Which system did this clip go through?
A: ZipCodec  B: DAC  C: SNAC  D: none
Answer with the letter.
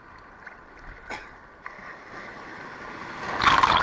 D